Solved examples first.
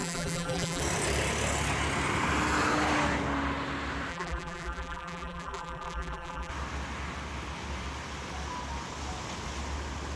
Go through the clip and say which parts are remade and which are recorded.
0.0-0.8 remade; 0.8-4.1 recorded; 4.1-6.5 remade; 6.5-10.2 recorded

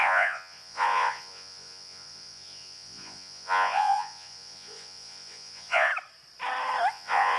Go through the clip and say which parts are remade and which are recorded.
0.0-5.9 remade; 5.9-6.9 recorded; 6.9-7.4 remade

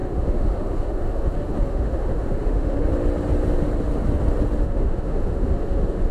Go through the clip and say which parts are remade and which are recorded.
0.0-2.9 remade; 2.9-4.6 recorded; 4.6-6.1 remade

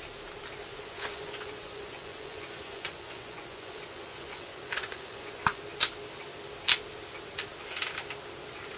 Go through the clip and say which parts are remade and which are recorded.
0.0-0.7 recorded; 0.7-5.6 remade; 5.6-8.8 recorded

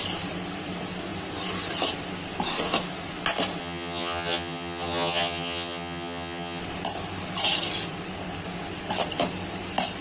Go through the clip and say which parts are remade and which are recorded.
0.0-3.6 recorded; 3.6-6.6 remade; 6.6-10.0 recorded

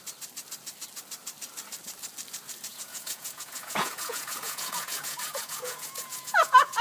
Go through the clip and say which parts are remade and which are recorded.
0.0-2.7 recorded; 2.7-6.8 remade

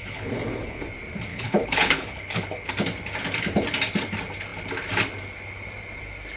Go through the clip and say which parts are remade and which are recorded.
0.0-0.8 remade; 0.8-1.3 recorded; 1.3-2.7 remade; 2.7-6.4 recorded

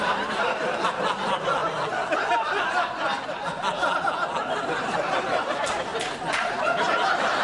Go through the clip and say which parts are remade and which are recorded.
0.0-7.4 recorded